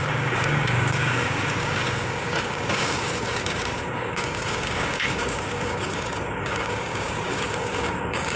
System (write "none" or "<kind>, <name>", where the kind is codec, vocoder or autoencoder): codec, DAC